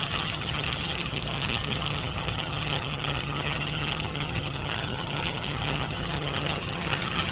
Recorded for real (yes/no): no